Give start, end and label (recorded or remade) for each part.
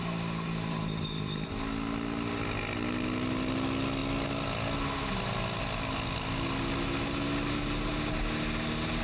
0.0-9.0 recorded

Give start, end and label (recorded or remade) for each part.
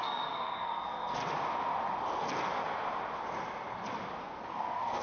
0.0-1.2 remade; 1.2-4.2 recorded; 4.2-5.0 remade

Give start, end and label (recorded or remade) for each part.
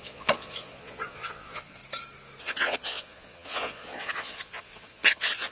0.0-1.8 remade; 1.8-2.4 recorded; 2.4-5.5 remade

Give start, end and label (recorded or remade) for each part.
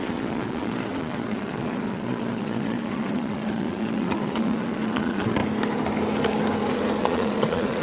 0.0-5.4 remade; 5.4-7.0 recorded; 7.0-7.8 remade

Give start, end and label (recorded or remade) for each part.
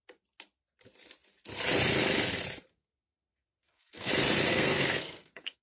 0.0-2.7 recorded; 2.7-4.1 remade; 4.1-4.5 recorded; 4.5-5.6 remade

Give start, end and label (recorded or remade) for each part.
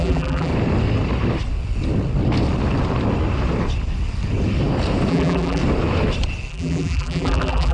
0.0-0.5 remade; 0.5-5.1 recorded; 5.1-5.6 remade; 5.6-6.5 recorded; 6.5-7.7 remade